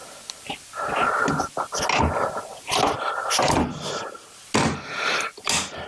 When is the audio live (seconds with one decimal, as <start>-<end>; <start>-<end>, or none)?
0.0-5.9